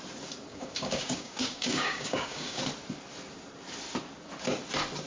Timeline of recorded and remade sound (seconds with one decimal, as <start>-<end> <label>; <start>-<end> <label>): 0.0-0.5 recorded; 0.5-2.6 remade; 2.6-5.1 recorded

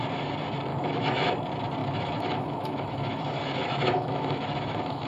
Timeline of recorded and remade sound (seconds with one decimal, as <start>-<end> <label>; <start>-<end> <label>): 0.0-0.7 recorded; 0.7-1.3 remade; 1.3-1.8 recorded; 1.8-5.1 remade

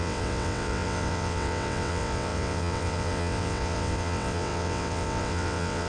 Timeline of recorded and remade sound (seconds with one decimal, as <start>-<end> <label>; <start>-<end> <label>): 0.0-5.9 remade

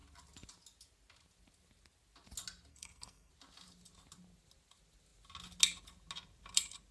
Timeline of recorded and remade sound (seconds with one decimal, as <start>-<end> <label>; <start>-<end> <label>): 0.0-2.7 recorded; 2.7-3.3 remade; 3.3-6.9 recorded

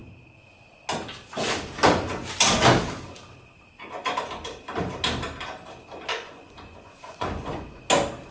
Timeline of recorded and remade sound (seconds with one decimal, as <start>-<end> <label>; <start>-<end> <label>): 0.0-6.1 recorded; 6.1-7.8 remade; 7.8-8.3 recorded

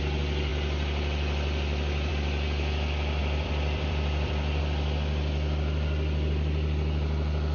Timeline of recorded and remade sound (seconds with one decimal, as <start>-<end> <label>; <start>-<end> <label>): 0.0-3.2 recorded; 3.2-4.6 remade; 4.6-7.5 recorded

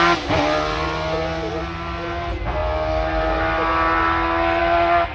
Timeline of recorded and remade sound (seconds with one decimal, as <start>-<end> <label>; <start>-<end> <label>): 0.0-5.1 recorded